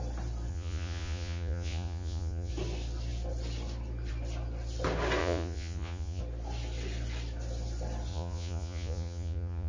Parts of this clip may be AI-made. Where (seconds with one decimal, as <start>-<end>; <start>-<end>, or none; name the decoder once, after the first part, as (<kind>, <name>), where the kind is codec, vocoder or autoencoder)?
0.5-2.5 (vocoder, Vocos); 5.2-6.2; 8.1-9.7